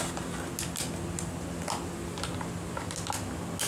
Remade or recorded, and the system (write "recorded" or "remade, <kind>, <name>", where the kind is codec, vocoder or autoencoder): recorded